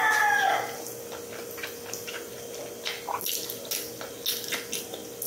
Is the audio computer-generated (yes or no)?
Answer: no